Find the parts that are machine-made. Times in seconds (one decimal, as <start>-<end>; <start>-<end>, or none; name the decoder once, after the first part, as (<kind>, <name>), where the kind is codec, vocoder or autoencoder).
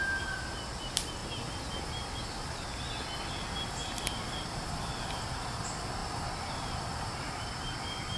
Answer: none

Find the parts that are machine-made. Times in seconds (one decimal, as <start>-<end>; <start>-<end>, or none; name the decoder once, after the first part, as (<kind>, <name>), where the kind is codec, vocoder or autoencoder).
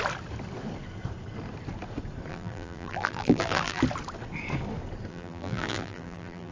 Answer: 2.3-3.8 (vocoder, BigVGAN v2); 5.1-6.5